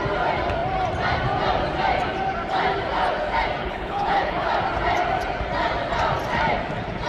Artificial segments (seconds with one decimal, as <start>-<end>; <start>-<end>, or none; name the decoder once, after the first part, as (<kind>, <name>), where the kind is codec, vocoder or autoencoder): 3.6-4.5 (codec, HILCodec)